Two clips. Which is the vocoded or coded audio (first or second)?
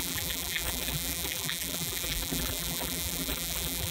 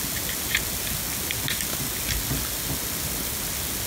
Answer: first